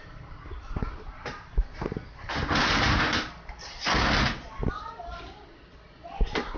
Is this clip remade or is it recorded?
recorded